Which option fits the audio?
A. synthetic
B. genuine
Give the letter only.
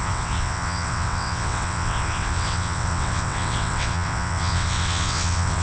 A